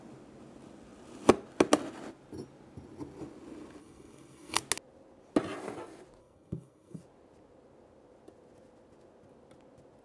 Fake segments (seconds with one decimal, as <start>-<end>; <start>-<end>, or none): 3.8-4.6; 6.2-7.0